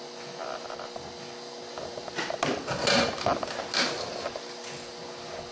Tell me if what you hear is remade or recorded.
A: recorded